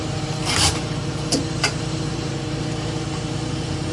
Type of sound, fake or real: fake